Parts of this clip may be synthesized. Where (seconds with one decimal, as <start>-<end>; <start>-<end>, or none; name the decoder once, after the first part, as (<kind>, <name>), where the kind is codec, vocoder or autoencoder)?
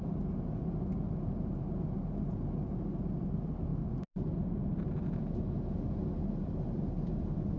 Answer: 6.4-7.6 (vocoder, BigVGAN v2)